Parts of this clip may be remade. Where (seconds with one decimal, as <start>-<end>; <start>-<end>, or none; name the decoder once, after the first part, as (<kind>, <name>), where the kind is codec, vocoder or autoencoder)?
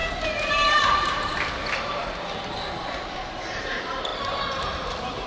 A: 0.5-1.3 (vocoder, BigVGAN v2); 2.8-4.1